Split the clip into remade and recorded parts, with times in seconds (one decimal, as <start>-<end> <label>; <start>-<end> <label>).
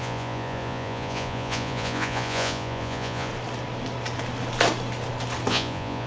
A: 0.0-3.3 remade; 3.3-5.5 recorded; 5.5-6.1 remade